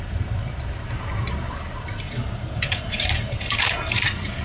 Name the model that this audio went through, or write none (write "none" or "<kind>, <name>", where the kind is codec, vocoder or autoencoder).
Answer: vocoder, BigVGAN v2